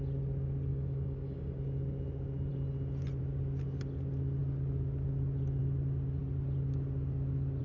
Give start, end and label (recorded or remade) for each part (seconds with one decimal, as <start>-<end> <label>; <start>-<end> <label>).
0.0-0.7 recorded; 0.7-1.6 remade; 1.6-7.6 recorded